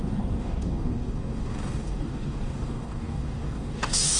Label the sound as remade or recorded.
remade